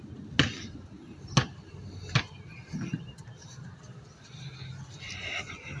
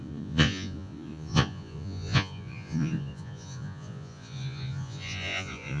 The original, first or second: first